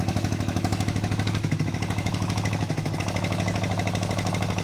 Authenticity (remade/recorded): remade